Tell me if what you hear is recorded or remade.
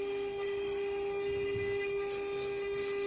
recorded